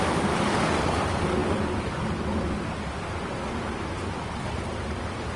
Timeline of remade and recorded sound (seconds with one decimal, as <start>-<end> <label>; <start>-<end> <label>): 0.0-5.4 recorded